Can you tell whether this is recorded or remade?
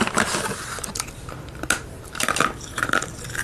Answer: recorded